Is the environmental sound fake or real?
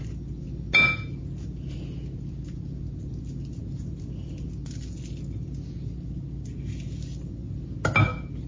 real